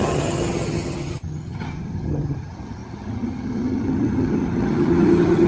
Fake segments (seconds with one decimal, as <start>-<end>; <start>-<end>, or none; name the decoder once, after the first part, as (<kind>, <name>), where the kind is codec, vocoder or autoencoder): 0.0-5.5 (vocoder, HiFi-GAN)